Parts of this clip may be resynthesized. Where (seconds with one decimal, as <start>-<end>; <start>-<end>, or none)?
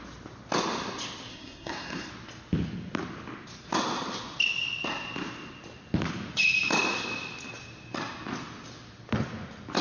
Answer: 1.3-2.1